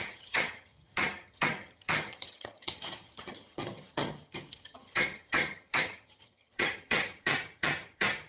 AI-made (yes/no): yes